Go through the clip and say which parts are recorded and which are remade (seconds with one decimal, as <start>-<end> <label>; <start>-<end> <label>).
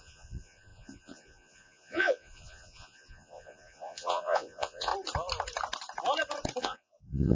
0.0-4.9 remade; 4.9-6.6 recorded; 6.6-7.3 remade